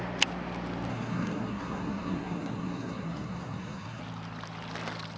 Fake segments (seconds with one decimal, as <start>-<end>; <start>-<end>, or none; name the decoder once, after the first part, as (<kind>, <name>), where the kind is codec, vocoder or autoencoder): 0.9-4.0 (codec, SNAC)